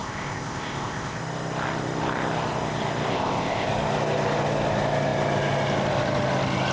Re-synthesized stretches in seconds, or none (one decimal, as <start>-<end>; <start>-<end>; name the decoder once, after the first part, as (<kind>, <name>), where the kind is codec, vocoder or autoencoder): 0.0-1.2 (codec, ZipCodec); 3.1-3.7